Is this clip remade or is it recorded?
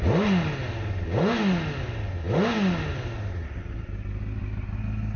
recorded